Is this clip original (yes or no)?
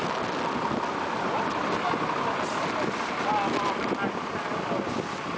yes